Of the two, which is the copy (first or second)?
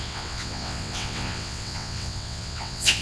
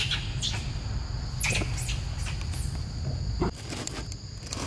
first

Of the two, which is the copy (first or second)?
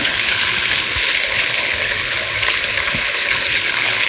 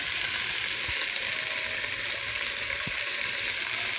first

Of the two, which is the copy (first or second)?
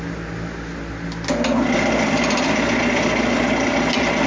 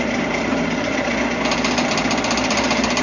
second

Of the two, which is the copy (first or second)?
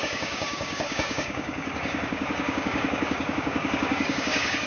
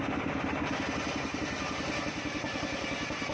first